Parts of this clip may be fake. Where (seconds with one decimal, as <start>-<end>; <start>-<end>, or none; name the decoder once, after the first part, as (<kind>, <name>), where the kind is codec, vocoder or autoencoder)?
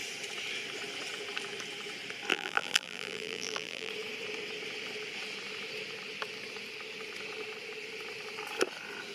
2.3-3.9 (vocoder, BigVGAN v2)